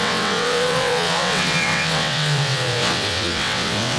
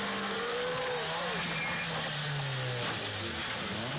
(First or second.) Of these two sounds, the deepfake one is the first